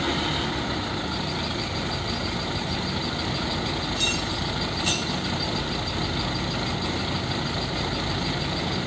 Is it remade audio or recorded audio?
recorded